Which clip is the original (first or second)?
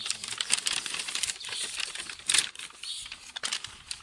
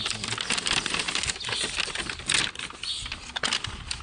second